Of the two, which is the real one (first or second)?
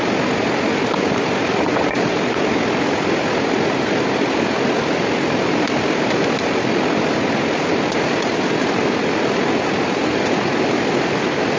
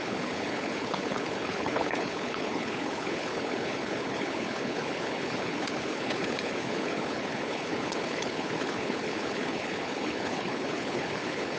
first